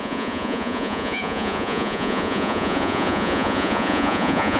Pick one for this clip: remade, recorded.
remade